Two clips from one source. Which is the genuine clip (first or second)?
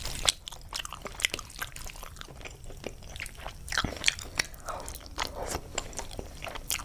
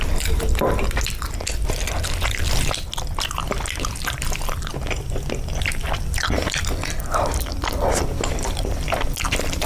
second